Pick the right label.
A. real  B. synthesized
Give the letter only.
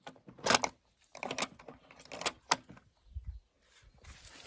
A